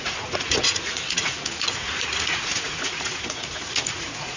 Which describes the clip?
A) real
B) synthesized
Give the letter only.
B